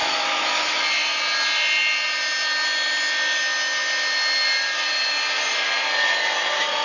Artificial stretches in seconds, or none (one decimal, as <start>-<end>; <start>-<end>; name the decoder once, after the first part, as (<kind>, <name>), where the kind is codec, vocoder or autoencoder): 0.0-0.8 (autoencoder, DAC-VAE)

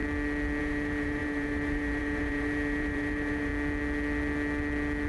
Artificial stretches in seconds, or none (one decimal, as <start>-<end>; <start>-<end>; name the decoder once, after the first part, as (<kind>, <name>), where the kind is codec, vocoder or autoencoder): 0.6-3.5 (vocoder, BigVGAN v2)

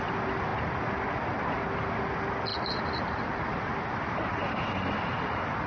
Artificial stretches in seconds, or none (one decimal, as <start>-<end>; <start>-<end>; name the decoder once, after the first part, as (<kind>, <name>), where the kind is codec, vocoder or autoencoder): 2.5-3.2 (vocoder, BigVGAN v2)

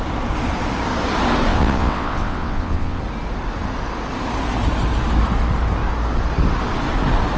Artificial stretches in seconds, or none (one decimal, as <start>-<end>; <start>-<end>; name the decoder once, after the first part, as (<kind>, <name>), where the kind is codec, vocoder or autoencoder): 1.5-3.0 (vocoder, WaveNeXt)

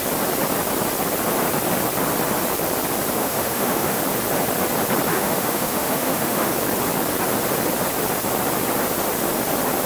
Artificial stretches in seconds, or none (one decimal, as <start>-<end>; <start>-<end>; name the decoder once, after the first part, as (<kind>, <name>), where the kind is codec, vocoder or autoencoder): 3.2-4.0 (autoencoder, DAC-VAE); 5.1-6.5